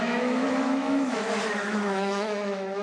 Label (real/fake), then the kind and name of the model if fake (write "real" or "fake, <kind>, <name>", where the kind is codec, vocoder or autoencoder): fake, autoencoder, DAC-VAE